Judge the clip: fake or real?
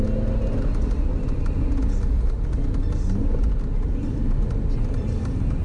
real